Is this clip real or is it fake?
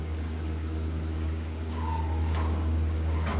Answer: fake